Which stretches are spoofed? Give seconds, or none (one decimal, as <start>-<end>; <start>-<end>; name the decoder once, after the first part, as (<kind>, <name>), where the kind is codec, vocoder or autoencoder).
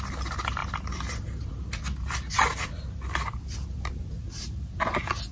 none